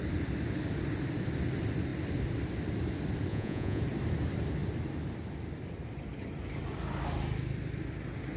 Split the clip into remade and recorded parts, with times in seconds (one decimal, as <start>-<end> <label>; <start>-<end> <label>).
0.0-3.3 recorded; 3.3-3.8 remade; 3.8-8.4 recorded

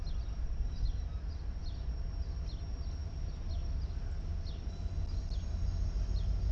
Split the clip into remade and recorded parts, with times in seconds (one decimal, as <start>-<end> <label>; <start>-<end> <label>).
0.0-6.5 recorded

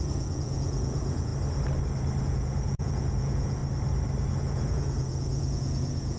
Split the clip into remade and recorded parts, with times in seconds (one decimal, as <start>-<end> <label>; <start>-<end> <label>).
0.0-1.3 remade; 1.3-2.2 recorded; 2.2-3.6 remade; 3.6-4.4 recorded; 4.4-6.2 remade

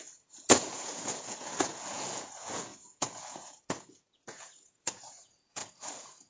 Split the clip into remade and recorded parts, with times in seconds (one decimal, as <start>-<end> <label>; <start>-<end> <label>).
0.0-6.3 remade

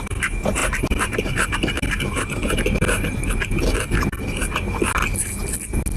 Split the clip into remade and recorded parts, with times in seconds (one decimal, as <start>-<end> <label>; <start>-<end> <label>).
0.0-6.0 recorded